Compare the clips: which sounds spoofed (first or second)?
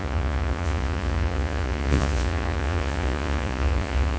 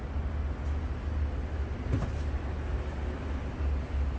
first